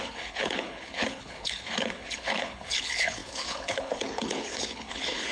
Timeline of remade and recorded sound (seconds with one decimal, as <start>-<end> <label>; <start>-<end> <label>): 0.0-5.3 remade